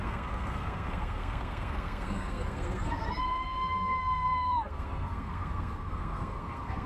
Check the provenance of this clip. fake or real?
fake